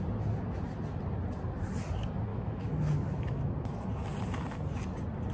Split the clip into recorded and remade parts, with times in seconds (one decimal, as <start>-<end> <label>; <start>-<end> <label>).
0.0-2.3 recorded; 2.3-3.5 remade; 3.5-5.3 recorded